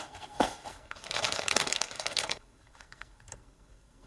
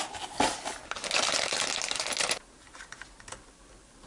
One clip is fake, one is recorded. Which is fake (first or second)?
first